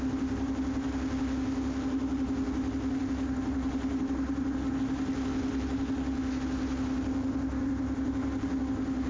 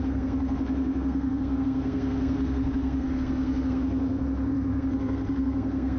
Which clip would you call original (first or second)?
first